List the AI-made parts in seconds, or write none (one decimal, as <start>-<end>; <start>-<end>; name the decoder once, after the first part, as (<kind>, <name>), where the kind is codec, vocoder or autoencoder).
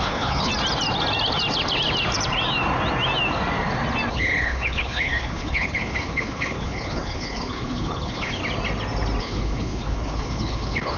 0.0-0.5 (codec, HILCodec); 4.1-8.4; 9.2-11.0